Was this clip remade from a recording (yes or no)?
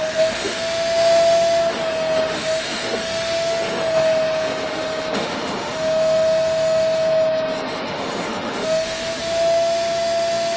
yes